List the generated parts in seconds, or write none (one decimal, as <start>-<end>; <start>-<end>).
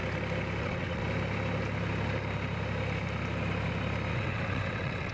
0.6-1.0; 4.1-5.1